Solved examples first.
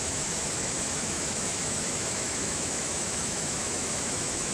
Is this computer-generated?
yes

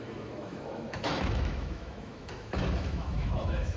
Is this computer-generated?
yes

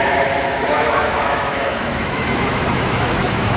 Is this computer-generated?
yes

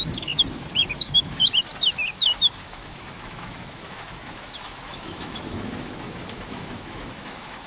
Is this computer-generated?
yes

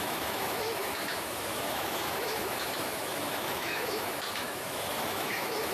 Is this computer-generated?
yes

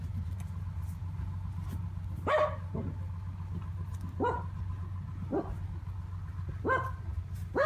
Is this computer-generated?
no